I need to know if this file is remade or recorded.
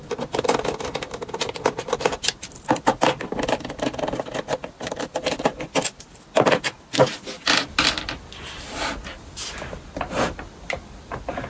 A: recorded